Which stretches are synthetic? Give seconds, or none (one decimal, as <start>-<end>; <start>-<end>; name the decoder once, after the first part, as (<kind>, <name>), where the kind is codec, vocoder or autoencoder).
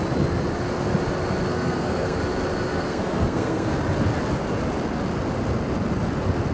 1.5-2.2 (codec, SNAC); 2.7-3.7